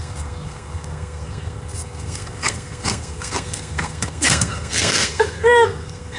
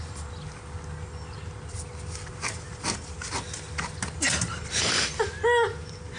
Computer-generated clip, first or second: first